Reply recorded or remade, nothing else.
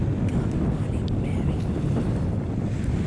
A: recorded